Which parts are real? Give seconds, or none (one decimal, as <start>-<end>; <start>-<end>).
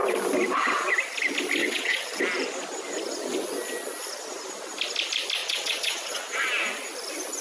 0.0-1.6; 2.2-5.4; 6.5-7.4